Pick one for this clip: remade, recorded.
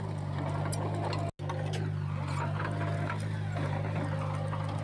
recorded